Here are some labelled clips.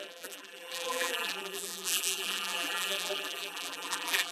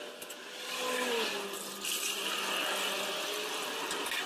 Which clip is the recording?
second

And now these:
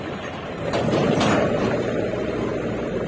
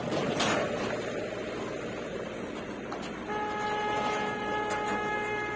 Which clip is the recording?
second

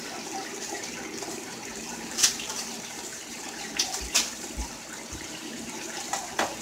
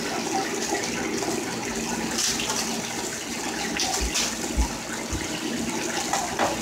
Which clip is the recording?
second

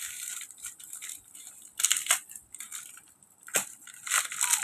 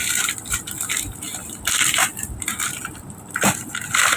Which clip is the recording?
second